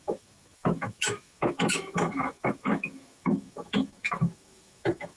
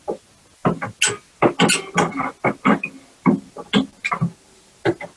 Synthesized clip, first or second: first